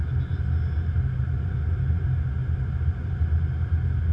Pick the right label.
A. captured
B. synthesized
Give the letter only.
A